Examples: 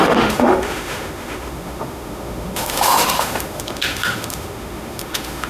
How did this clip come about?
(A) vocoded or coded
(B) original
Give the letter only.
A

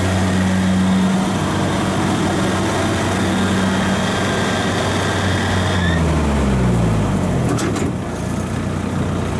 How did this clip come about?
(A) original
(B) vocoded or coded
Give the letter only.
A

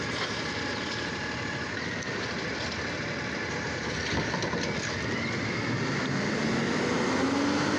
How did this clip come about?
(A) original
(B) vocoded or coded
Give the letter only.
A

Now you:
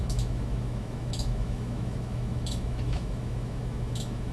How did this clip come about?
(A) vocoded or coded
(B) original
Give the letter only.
A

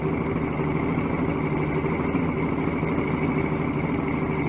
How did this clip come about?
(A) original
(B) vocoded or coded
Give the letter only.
A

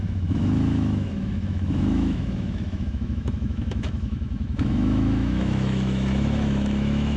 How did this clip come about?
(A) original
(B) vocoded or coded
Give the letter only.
B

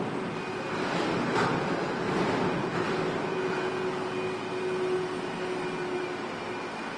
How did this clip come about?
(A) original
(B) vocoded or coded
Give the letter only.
A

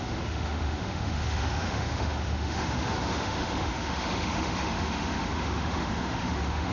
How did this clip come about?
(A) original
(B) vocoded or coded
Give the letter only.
B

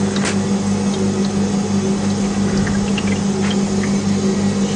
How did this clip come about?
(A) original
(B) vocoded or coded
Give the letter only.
A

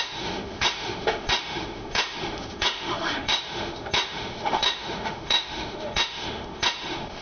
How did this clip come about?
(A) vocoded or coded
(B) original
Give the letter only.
A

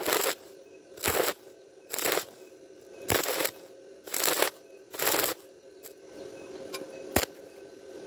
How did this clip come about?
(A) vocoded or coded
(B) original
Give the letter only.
B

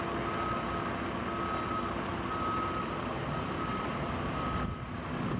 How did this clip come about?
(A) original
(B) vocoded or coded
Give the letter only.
A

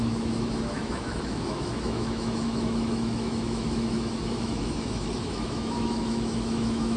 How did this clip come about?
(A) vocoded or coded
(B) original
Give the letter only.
A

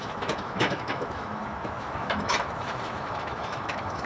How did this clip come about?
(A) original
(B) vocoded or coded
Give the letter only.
B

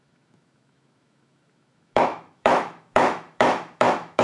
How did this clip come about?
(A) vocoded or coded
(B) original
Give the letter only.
A